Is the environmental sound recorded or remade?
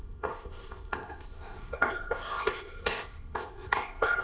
remade